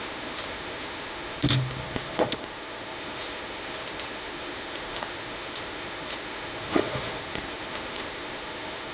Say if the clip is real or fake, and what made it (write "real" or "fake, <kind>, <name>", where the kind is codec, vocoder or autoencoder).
fake, autoencoder, DAC-VAE